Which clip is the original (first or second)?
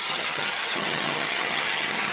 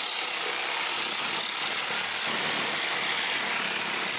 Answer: second